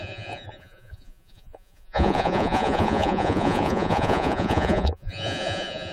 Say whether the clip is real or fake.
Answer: fake